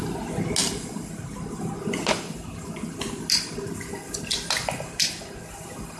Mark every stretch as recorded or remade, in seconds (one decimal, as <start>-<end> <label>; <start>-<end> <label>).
0.0-6.0 recorded